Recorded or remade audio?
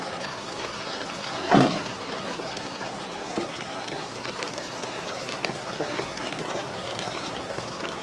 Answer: remade